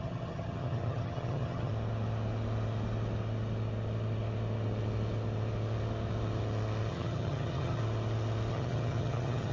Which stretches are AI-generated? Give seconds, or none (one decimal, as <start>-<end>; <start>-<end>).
0.0-1.7; 6.9-7.8; 8.5-9.5